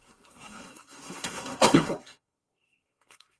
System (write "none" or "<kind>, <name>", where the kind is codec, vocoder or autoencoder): codec, SNAC